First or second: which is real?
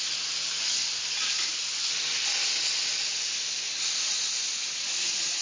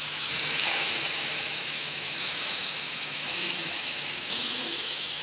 first